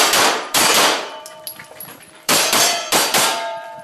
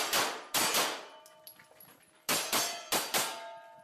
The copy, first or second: first